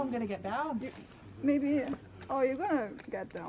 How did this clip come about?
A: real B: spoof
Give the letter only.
A